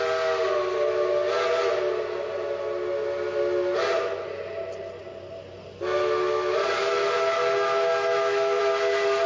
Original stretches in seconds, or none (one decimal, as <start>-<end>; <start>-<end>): 0.0-6.8; 8.6-9.3